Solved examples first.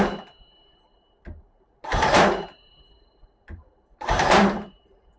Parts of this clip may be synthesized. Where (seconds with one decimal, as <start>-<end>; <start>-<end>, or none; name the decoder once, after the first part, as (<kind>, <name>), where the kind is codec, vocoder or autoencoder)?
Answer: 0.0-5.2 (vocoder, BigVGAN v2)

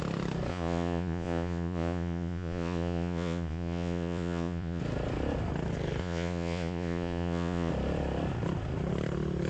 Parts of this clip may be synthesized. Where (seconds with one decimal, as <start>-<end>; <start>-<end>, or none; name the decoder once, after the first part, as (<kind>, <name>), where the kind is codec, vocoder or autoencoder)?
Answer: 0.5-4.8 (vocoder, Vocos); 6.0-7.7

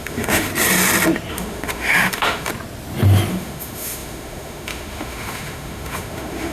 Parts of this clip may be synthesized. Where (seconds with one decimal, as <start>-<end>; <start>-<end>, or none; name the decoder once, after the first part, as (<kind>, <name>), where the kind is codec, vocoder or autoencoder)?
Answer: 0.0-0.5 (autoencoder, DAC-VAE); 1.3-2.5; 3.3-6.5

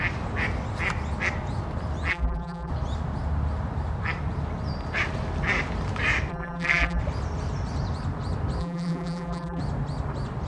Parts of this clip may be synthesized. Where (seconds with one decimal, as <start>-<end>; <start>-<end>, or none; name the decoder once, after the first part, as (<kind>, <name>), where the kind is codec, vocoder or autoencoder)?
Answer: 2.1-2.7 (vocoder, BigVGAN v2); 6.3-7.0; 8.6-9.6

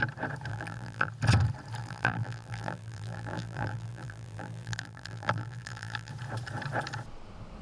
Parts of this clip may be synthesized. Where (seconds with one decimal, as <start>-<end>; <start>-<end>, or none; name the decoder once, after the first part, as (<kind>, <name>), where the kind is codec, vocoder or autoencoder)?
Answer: 0.5-1.1 (vocoder, BigVGAN v2); 1.8-6.1

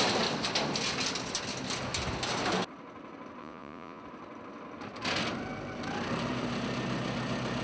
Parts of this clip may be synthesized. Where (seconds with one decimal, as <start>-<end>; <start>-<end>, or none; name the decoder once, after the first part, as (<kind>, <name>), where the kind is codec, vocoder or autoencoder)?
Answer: 3.4-4.0 (vocoder, Vocos)